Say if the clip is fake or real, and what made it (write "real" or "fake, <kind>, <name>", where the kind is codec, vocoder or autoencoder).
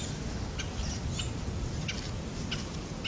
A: real